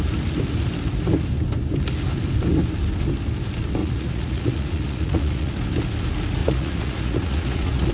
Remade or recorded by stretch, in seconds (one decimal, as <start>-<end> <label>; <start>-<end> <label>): 0.0-3.8 recorded; 3.8-5.5 remade; 5.5-6.4 recorded; 6.4-7.9 remade